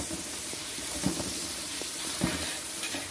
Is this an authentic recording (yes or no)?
no